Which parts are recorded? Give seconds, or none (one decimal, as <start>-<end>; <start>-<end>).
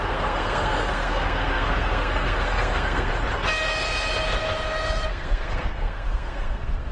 3.1-5.1